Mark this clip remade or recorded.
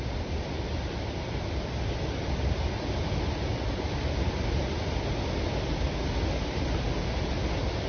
recorded